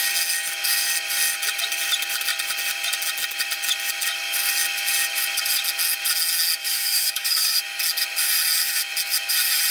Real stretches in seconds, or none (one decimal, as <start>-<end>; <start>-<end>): 0.0-6.6; 7.6-9.7